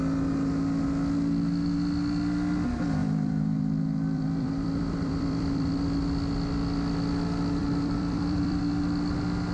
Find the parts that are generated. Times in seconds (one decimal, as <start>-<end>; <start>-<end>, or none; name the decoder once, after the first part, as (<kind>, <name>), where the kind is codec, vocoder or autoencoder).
3.0-5.7 (vocoder, BigVGAN v2); 7.6-8.6